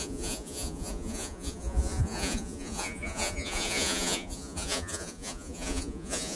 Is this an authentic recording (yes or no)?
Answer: no